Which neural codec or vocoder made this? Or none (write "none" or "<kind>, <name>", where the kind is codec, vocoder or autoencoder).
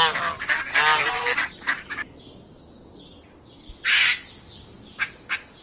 none